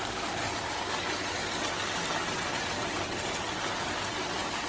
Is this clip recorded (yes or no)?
yes